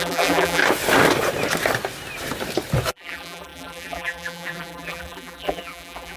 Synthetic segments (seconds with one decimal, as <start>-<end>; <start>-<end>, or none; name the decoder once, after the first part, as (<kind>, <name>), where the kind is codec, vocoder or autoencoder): 0.0-0.6 (vocoder, BigVGAN v2); 2.9-6.2